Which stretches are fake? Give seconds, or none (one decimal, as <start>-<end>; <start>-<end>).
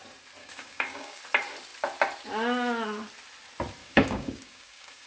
0.4-1.2; 3.8-5.1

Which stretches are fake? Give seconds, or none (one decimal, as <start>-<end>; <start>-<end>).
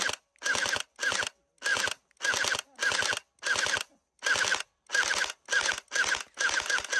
none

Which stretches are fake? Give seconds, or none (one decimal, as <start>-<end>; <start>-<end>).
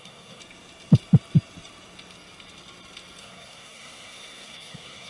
0.0-0.4; 3.2-5.1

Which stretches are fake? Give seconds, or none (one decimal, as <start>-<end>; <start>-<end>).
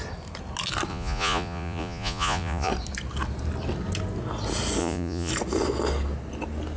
0.9-2.7; 4.8-5.3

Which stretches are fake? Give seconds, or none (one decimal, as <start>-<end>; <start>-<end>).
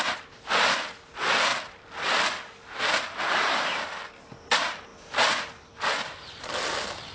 none